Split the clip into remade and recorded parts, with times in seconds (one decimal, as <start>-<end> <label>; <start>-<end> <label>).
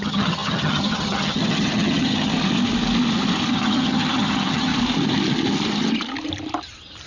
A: 0.0-2.3 remade; 2.3-3.5 recorded; 3.5-4.7 remade; 4.7-7.1 recorded